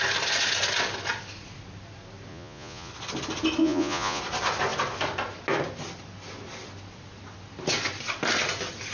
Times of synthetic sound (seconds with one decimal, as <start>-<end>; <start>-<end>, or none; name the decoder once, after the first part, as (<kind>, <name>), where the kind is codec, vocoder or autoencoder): 2.3-2.9 (vocoder, Vocos); 3.6-4.2